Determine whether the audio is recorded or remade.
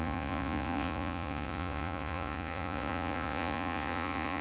remade